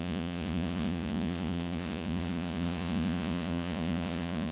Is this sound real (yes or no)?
no